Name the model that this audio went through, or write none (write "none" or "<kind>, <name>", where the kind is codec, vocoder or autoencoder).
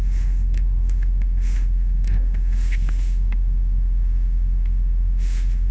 autoencoder, DAC-VAE